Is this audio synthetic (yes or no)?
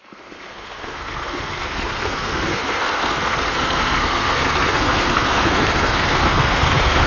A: yes